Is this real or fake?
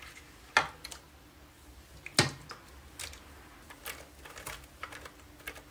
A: real